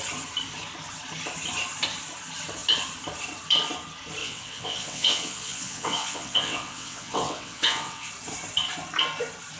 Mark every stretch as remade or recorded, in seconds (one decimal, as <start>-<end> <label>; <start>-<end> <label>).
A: 0.0-4.2 recorded; 4.2-8.1 remade; 8.1-9.6 recorded